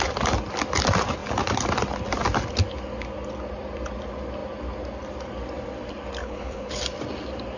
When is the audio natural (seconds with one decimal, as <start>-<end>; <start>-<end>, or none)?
0.0-6.2; 6.8-7.6